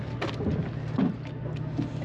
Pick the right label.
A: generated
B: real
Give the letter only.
B